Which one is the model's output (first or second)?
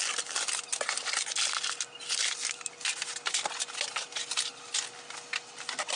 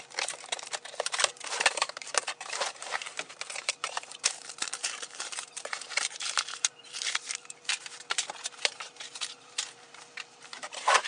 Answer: second